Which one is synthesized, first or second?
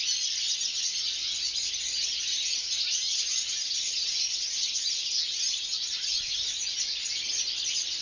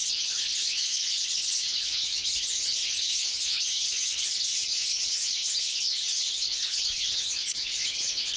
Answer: second